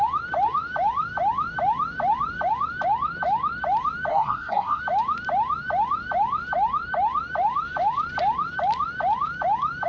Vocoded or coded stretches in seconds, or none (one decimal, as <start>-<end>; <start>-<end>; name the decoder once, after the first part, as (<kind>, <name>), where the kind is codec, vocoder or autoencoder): 4.1-4.8 (codec, SNAC)

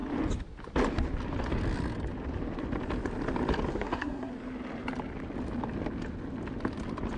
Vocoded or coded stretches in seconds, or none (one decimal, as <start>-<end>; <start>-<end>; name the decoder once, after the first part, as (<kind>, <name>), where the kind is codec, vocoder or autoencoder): 3.7-4.3 (codec, SNAC)

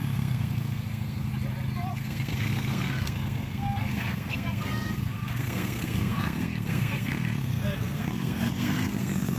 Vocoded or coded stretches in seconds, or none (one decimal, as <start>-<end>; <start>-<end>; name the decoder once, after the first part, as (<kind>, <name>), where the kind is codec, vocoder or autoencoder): 0.0-1.3 (codec, SNAC); 1.9-9.4

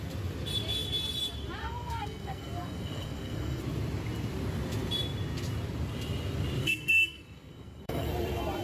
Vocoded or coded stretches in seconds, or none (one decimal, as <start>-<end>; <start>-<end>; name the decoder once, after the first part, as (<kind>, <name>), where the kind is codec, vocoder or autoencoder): 1.6-3.6 (codec, SNAC); 6.6-8.1

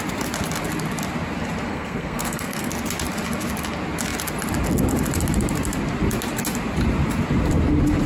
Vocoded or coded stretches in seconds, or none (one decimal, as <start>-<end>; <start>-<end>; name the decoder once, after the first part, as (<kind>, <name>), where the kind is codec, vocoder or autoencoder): 1.7-2.7 (codec, SNAC)

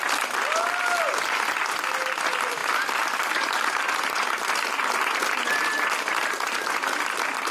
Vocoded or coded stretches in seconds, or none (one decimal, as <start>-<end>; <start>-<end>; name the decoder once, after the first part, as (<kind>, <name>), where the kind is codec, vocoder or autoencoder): none

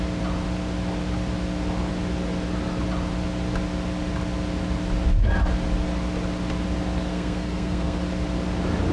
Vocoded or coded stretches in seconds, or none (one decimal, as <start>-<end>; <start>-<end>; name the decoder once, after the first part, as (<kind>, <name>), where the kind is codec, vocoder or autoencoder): 7.1-8.0 (codec, SNAC)

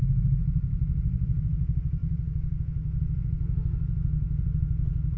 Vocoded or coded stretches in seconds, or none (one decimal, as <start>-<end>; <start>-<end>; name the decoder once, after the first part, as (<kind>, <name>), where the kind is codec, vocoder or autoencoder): none